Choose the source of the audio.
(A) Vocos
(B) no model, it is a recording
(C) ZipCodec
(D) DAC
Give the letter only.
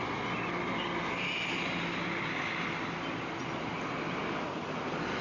B